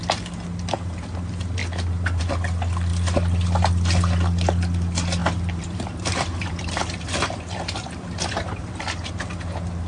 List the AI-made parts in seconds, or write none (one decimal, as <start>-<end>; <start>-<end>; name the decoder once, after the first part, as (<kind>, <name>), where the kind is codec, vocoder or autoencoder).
5.2-9.2 (vocoder, BigVGAN v2)